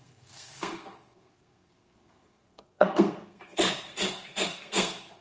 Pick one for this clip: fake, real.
fake